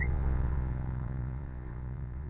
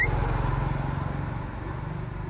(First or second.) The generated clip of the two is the first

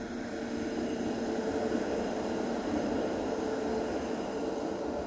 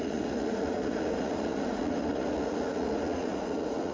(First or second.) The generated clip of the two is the second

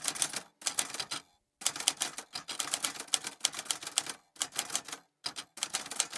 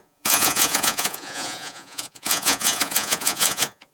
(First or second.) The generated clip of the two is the second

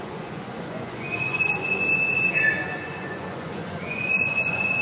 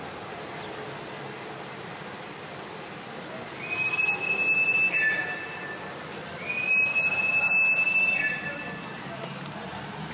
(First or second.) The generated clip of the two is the first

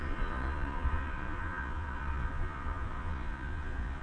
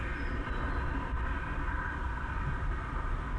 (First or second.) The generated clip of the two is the first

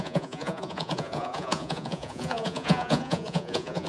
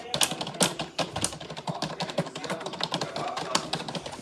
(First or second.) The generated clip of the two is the first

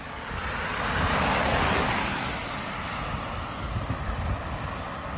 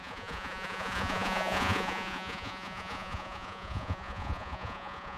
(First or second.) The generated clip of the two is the second